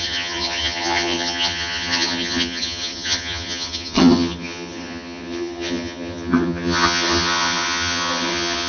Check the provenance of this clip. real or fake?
fake